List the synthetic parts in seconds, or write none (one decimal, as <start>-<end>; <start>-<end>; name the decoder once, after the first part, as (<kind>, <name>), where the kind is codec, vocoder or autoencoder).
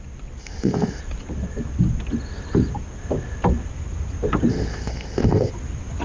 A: 0.4-1.0 (codec, ZipCodec); 4.5-5.5